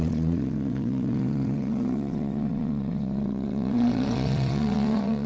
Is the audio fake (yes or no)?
yes